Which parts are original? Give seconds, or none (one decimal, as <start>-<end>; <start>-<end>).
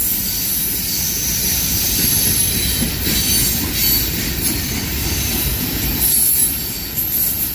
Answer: 0.0-7.5